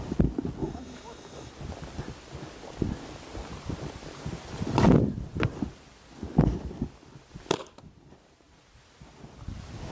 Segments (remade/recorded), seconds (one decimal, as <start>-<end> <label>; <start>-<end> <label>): 0.0-0.6 recorded; 0.6-1.5 remade; 1.5-9.9 recorded